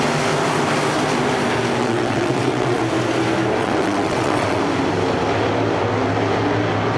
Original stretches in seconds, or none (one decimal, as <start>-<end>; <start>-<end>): 0.0-1.8; 2.8-3.6; 4.6-7.0